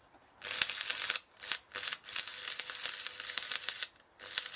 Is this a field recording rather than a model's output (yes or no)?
yes